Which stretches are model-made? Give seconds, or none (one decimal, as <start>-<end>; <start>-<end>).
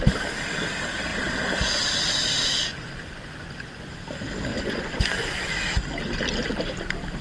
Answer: 2.7-3.9; 4.5-5.5